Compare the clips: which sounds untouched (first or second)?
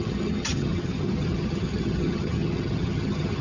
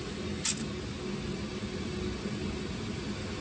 second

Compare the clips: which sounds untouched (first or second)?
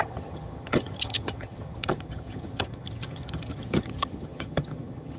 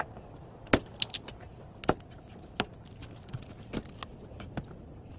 second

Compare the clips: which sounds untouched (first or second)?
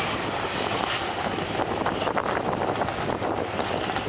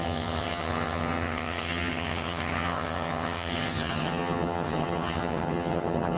first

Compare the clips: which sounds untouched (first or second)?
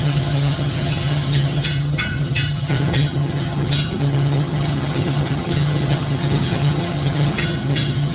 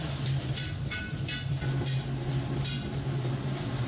second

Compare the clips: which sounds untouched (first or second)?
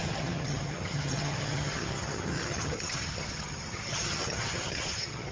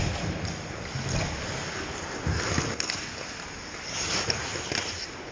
second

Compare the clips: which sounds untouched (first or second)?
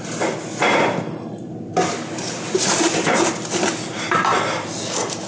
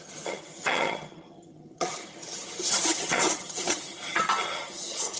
first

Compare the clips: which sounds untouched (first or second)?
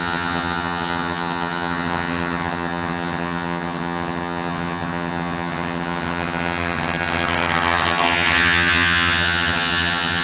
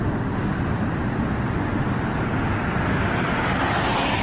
second